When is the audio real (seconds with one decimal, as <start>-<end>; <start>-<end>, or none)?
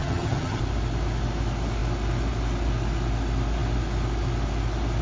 0.6-5.0